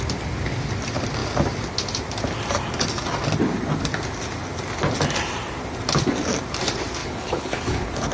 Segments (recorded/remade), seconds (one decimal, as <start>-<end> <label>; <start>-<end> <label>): 0.0-7.0 recorded; 7.0-8.1 remade